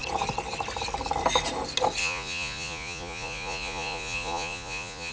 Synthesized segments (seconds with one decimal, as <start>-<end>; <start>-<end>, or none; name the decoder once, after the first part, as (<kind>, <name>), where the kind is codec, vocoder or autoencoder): 2.0-5.1 (vocoder, Vocos)